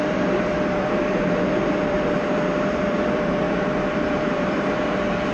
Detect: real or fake fake